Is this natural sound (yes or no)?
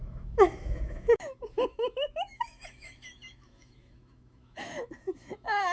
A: no